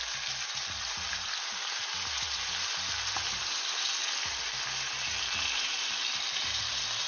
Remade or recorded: recorded